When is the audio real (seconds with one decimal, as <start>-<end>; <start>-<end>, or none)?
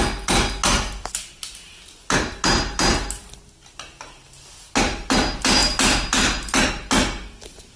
0.0-7.8